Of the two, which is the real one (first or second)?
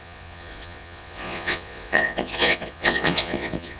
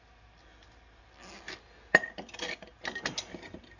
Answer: second